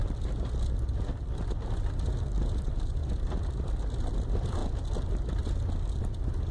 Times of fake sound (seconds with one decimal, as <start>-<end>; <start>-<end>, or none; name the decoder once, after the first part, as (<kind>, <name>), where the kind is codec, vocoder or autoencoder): none

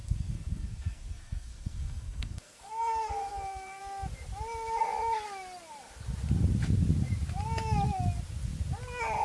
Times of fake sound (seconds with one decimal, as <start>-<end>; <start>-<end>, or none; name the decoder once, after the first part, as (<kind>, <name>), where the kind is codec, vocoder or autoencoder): 0.0-3.8 (codec, SNAC)

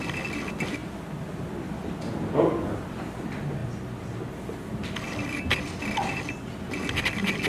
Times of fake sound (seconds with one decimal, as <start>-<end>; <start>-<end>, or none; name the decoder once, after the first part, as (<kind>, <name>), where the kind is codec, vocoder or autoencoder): none

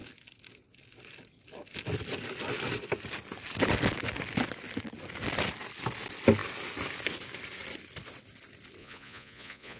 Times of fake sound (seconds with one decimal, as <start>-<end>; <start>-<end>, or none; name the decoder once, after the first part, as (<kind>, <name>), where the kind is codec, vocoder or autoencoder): 8.8-9.8 (vocoder, Vocos)

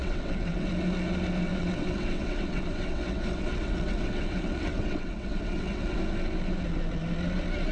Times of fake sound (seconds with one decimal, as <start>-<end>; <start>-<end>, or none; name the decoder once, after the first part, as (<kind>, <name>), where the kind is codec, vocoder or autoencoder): 0.0-0.7 (vocoder, WaveNeXt); 1.5-6.0

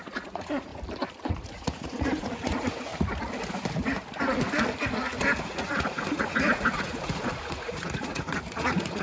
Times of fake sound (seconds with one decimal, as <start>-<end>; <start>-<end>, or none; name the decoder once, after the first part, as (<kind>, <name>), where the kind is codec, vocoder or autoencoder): 0.0-0.7 (vocoder, Vocos); 1.3-2.9; 5.4-9.0

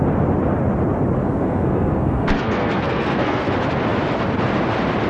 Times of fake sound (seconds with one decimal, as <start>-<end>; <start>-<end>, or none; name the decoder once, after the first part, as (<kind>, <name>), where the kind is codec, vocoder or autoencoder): 1.2-3.5 (codec, SNAC)